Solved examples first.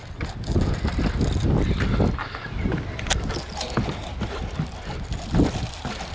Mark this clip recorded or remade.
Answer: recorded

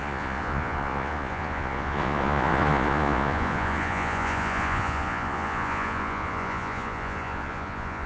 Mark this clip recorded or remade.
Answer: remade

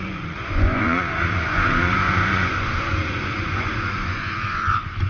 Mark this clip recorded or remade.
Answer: remade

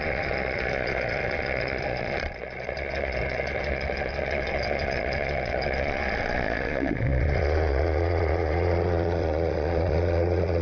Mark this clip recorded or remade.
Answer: remade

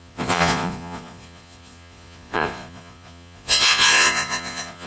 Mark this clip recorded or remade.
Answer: remade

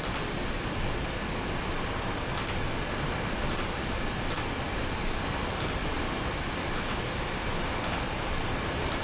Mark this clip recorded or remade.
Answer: recorded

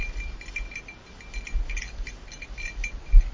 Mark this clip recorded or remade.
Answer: recorded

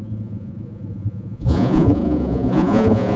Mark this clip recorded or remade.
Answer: remade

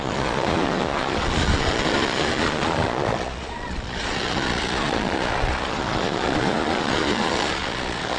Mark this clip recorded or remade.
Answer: remade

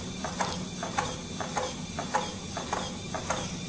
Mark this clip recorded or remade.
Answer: recorded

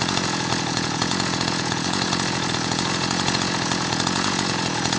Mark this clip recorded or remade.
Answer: remade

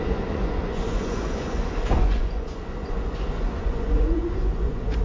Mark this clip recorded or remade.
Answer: remade